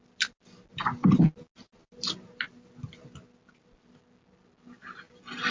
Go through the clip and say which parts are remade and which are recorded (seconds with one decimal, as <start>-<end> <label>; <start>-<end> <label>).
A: 0.0-5.5 recorded